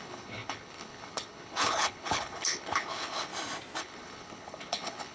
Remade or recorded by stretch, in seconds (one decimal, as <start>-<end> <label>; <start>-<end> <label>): 0.0-3.3 remade; 3.3-3.8 recorded; 3.8-5.1 remade